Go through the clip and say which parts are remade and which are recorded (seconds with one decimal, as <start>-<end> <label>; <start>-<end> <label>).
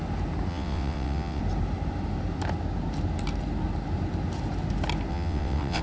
0.0-0.5 recorded; 0.5-1.4 remade; 1.4-5.1 recorded; 5.1-5.8 remade